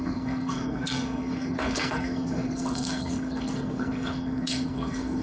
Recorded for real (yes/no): no